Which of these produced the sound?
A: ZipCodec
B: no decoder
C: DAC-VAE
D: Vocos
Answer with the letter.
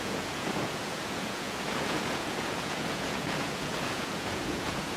D